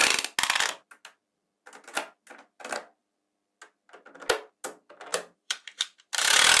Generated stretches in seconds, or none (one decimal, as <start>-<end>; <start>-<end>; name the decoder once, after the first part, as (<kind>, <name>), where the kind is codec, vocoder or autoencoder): 5.1-6.6 (vocoder, BigVGAN v2)